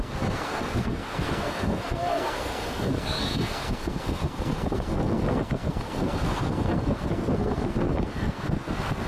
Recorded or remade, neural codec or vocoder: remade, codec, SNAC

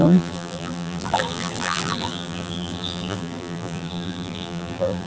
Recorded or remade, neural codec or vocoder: remade, vocoder, BigVGAN v2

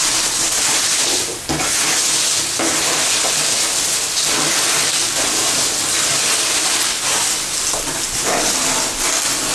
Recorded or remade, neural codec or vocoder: recorded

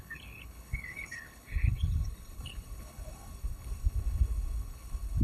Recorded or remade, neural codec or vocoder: remade, codec, HILCodec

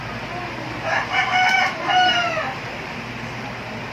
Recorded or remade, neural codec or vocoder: recorded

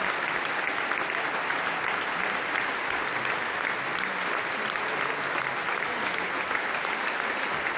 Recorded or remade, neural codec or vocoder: recorded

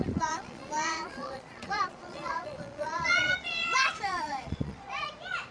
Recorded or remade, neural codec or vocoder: remade, vocoder, Vocos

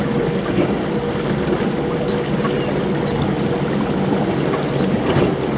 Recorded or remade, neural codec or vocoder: recorded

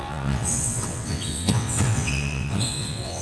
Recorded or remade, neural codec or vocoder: remade, vocoder, WaveNeXt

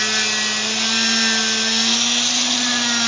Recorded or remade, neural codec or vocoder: recorded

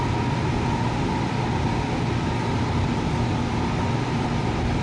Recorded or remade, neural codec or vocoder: recorded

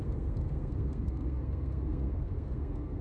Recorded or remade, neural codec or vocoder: remade, codec, SNAC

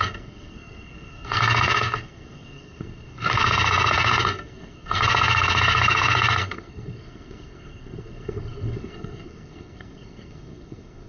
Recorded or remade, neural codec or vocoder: remade, codec, SNAC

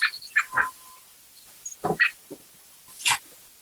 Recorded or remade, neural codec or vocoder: remade, vocoder, BigVGAN v2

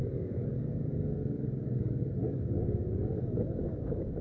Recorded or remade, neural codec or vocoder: remade, codec, DAC